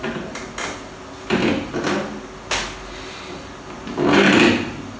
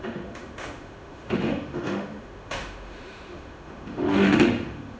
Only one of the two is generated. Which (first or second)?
second